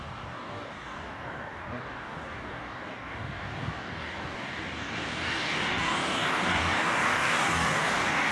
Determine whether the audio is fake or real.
fake